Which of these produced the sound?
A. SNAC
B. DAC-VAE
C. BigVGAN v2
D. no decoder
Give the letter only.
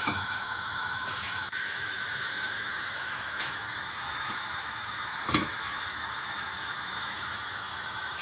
B